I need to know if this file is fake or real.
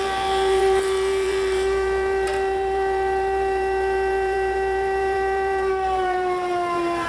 fake